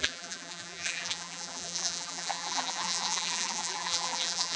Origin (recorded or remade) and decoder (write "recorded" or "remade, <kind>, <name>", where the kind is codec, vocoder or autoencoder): remade, vocoder, BigVGAN v2